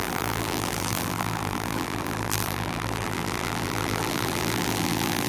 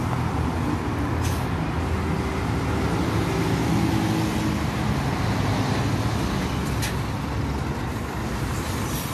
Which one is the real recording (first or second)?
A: second